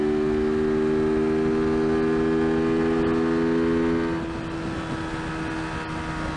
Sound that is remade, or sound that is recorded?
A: recorded